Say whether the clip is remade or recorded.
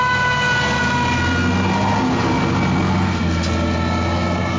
recorded